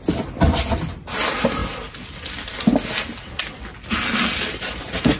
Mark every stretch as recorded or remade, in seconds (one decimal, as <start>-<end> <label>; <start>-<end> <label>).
0.0-1.6 remade; 1.6-4.6 recorded; 4.6-5.2 remade